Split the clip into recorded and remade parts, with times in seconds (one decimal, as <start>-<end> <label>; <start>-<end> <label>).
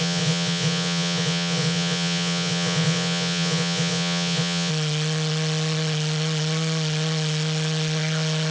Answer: 0.0-4.7 remade; 4.7-8.5 recorded